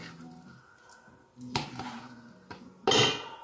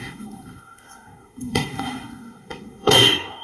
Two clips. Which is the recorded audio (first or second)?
first